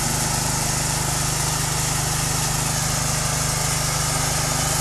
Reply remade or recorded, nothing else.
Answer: recorded